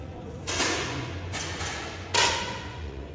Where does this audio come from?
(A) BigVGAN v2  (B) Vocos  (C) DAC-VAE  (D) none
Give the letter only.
B